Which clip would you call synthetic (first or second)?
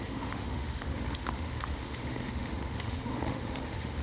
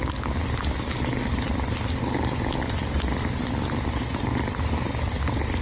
first